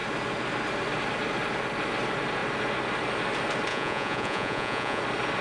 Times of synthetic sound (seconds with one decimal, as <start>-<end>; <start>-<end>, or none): 3.7-5.0